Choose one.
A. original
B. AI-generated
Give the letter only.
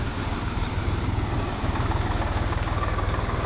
B